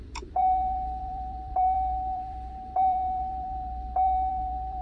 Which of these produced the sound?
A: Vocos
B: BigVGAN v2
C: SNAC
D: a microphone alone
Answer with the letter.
B